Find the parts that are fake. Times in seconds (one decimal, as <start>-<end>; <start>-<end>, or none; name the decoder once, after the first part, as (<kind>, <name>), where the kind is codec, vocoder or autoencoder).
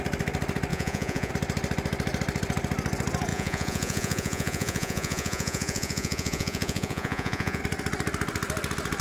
0.7-1.3 (vocoder, Vocos); 3.3-7.6